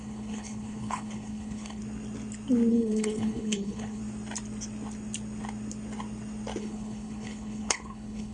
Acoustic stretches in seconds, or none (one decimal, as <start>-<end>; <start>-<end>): 1.8-2.7; 4.0-6.6